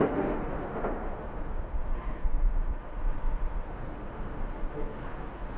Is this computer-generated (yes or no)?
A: yes